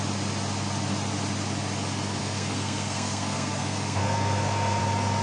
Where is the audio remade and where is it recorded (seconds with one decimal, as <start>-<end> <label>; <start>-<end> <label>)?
0.0-2.2 recorded; 2.2-4.8 remade; 4.8-5.2 recorded